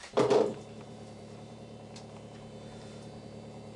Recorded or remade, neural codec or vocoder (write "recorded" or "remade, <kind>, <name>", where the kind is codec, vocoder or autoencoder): remade, vocoder, BigVGAN v2